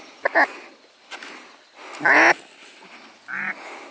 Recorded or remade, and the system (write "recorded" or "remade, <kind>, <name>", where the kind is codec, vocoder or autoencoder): recorded